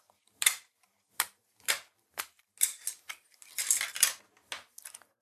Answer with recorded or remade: recorded